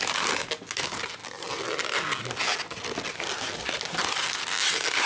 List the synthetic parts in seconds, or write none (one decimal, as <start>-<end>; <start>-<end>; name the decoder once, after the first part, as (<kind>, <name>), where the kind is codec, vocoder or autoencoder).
none